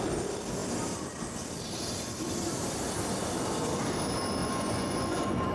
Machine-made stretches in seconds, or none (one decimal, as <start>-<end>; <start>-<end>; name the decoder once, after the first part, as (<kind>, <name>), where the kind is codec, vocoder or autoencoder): 4.4-5.5 (vocoder, Vocos)